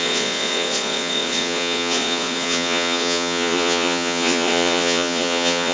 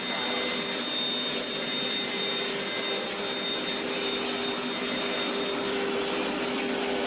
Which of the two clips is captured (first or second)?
second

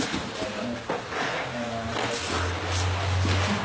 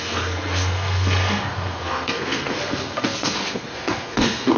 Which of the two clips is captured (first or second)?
first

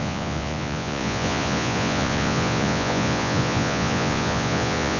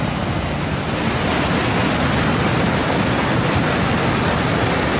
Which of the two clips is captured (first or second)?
second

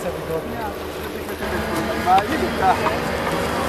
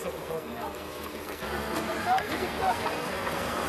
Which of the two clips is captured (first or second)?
first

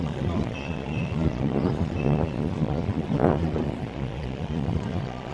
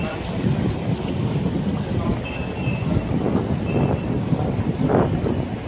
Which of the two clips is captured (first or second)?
second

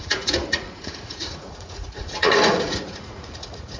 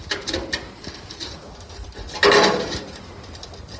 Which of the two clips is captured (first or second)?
second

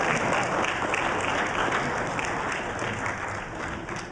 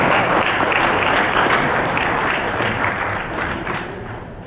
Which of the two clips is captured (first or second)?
first